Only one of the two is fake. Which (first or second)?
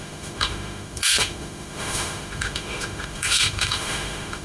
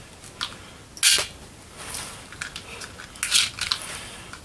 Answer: first